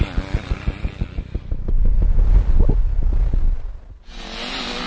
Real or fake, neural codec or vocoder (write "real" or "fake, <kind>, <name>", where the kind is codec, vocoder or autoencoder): real